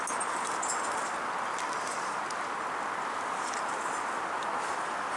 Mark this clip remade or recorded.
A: recorded